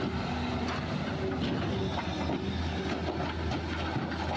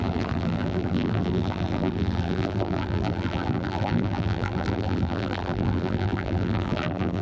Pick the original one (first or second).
first